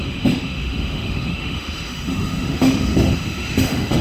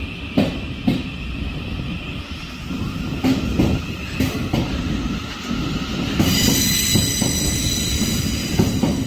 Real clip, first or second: second